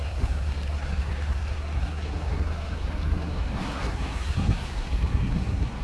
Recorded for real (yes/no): no